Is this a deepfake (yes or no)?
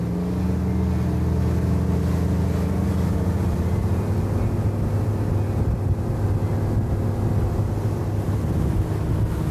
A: no